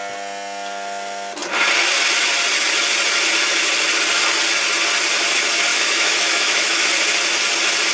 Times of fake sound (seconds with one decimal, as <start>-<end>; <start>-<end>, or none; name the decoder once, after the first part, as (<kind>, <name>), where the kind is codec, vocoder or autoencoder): 5.7-6.9 (autoencoder, DAC-VAE)